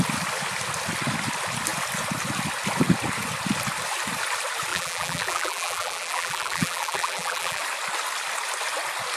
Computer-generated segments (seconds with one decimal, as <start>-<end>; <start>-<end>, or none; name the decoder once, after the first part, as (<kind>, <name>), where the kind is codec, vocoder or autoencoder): 4.7-7.6 (vocoder, BigVGAN v2)